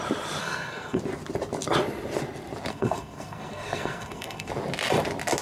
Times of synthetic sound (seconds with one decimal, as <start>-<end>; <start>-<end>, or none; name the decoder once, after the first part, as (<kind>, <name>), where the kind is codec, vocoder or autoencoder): 0.4-1.0 (codec, SNAC); 2.7-4.5